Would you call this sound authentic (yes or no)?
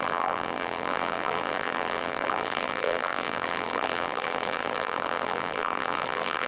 no